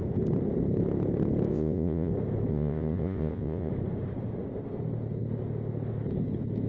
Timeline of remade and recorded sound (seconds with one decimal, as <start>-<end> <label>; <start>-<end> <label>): 0.0-1.5 recorded; 1.5-2.1 remade; 2.1-2.5 recorded; 2.5-3.7 remade; 3.7-6.7 recorded